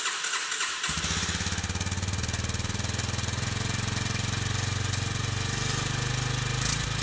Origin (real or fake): real